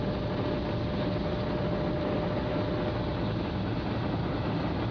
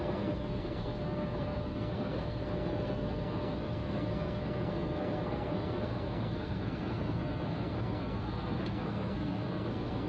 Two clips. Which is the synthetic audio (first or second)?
second